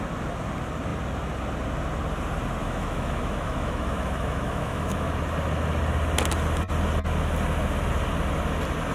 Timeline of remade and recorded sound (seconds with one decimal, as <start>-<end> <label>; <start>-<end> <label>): 0.0-2.6 recorded; 2.6-5.1 remade; 5.1-8.9 recorded